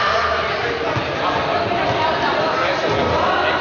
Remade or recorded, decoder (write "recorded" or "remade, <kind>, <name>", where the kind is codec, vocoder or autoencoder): recorded